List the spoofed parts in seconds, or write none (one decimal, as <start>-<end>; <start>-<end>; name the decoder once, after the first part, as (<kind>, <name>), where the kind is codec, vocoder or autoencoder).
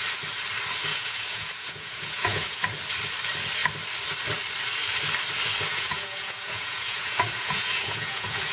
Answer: 0.9-2.7 (vocoder, Vocos); 5.7-8.5